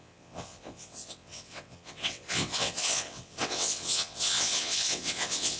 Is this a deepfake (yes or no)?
yes